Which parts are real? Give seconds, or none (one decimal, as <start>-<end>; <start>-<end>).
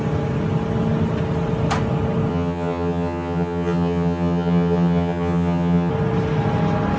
0.0-2.3; 5.9-7.0